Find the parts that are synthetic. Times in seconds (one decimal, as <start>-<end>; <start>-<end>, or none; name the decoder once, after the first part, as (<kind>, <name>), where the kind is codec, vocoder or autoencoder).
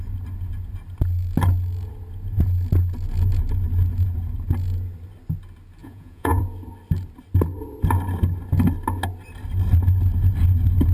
5.8-6.4 (vocoder, Vocos)